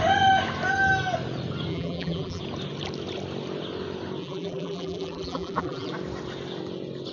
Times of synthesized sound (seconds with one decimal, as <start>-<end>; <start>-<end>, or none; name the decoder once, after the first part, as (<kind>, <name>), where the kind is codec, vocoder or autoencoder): 1.7-2.4 (vocoder, BigVGAN v2); 4.2-5.9